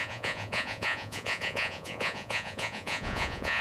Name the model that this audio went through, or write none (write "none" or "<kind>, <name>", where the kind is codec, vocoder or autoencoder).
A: vocoder, Vocos